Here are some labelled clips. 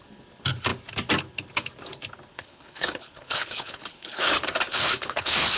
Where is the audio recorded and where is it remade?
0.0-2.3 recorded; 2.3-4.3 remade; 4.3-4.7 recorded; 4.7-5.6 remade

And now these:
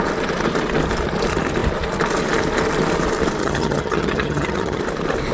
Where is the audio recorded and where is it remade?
0.0-3.4 recorded; 3.4-4.8 remade; 4.8-5.3 recorded

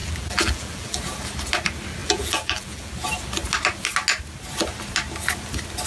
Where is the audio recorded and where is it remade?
0.0-1.0 remade; 1.0-2.0 recorded; 2.0-2.9 remade; 2.9-5.9 recorded

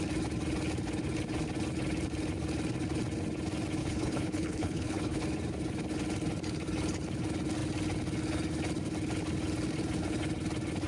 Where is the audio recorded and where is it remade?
0.0-3.8 recorded; 3.8-5.2 remade; 5.2-10.9 recorded